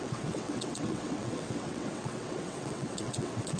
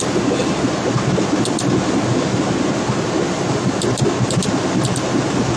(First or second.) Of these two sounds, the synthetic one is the first